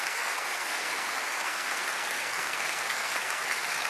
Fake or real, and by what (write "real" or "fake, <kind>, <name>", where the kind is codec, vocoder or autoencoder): fake, codec, SNAC